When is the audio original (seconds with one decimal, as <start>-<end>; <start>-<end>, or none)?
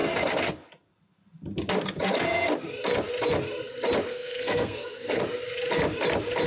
0.0-4.1; 5.2-6.5